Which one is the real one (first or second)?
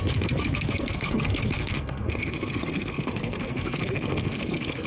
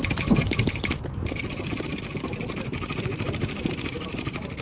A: second